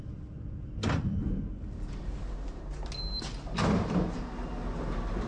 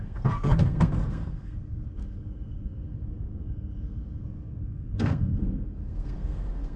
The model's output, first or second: second